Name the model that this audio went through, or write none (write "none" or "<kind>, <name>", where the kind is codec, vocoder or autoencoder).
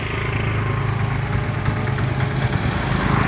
none